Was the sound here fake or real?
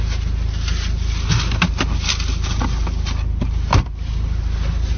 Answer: real